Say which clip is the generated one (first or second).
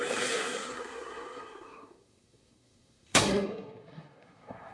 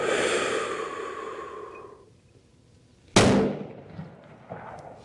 first